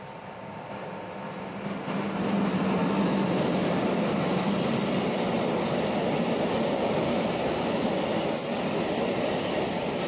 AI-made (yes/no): no